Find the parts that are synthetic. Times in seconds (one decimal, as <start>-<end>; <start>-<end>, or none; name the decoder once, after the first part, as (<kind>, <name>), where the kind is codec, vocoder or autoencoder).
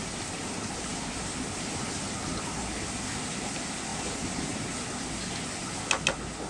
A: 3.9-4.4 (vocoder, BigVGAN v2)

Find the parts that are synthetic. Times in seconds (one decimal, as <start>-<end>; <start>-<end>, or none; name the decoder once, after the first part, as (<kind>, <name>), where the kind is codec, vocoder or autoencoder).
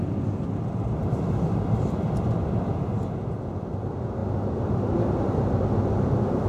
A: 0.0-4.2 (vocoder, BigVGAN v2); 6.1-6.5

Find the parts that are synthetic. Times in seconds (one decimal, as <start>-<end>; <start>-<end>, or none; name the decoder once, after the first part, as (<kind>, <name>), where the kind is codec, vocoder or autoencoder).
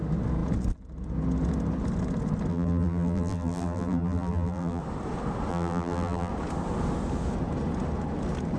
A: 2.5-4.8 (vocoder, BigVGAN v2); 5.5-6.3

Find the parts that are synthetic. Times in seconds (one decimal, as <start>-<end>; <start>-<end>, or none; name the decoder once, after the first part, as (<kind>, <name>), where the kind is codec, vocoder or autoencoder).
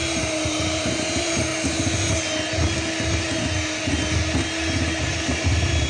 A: 0.0-1.5 (vocoder, BigVGAN v2); 5.0-5.9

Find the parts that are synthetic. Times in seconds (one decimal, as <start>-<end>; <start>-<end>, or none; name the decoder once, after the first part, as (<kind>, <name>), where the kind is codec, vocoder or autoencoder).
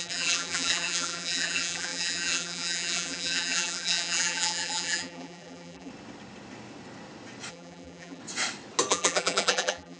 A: 0.0-5.9 (vocoder, BigVGAN v2); 7.5-8.2; 8.9-10.0